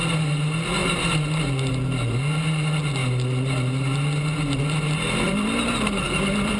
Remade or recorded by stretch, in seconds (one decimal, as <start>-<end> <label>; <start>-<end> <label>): 0.0-6.6 recorded